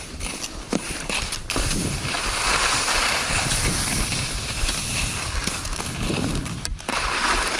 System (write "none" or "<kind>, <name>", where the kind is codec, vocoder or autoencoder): none